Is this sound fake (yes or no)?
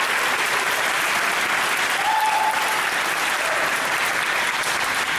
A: no